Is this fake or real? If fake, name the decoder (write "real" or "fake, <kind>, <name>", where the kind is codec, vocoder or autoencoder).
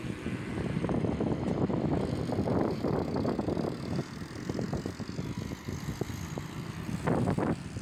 real